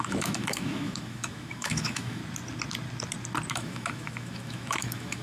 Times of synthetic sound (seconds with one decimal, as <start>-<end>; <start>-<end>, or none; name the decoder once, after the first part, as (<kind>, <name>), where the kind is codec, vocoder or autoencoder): 0.0-2.2 (autoencoder, DAC-VAE); 3.5-5.2